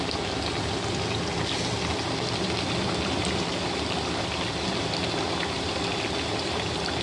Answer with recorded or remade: recorded